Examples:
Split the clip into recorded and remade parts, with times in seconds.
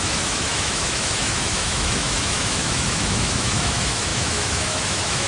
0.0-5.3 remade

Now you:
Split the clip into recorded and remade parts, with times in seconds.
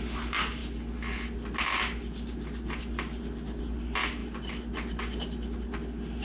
0.0-6.2 recorded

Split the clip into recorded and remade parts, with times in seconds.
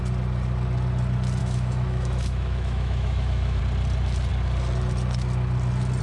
0.0-1.4 recorded; 1.4-3.6 remade; 3.6-6.0 recorded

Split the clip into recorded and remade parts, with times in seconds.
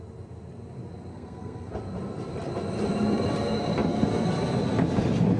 0.0-1.1 recorded; 1.1-1.7 remade; 1.7-5.4 recorded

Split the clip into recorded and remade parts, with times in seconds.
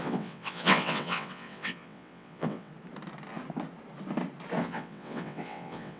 0.0-2.7 remade; 2.7-4.6 recorded; 4.6-6.0 remade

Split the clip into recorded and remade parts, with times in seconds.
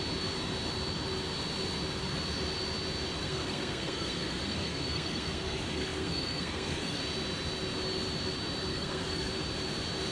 0.0-3.2 recorded; 3.2-7.0 remade; 7.0-8.7 recorded; 8.7-9.3 remade; 9.3-10.1 recorded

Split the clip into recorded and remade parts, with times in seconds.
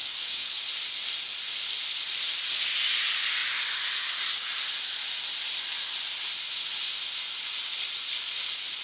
0.0-0.6 remade; 0.6-8.8 recorded